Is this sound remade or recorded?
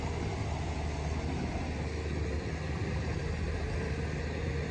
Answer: recorded